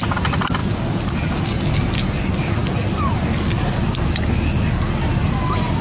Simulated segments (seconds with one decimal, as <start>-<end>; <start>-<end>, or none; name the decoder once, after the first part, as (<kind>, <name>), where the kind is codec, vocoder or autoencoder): none